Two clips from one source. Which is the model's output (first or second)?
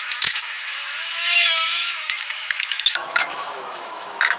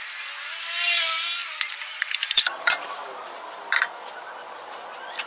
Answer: first